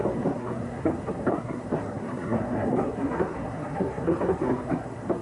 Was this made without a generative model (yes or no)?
no